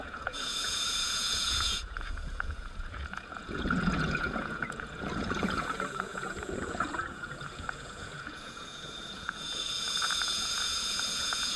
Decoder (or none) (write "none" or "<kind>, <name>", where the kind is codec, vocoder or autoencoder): vocoder, Vocos